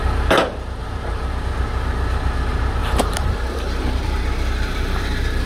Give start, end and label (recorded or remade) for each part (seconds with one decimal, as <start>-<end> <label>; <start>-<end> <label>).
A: 0.0-0.8 recorded; 0.8-1.3 remade; 1.3-2.8 recorded; 2.8-5.5 remade